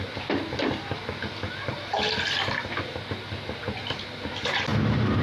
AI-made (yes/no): no